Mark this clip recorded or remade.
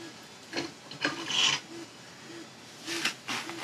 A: recorded